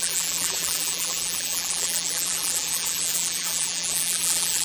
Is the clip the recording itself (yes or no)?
no